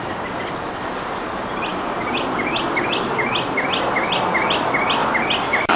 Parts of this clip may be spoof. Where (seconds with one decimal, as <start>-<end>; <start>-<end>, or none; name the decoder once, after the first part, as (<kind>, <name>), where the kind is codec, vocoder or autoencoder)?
1.7-2.7 (vocoder, BigVGAN v2); 5.0-5.8